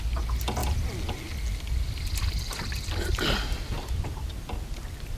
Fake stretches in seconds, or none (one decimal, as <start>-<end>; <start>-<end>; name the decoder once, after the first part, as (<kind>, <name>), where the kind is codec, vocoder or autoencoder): none